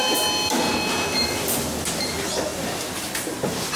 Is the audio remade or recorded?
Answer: remade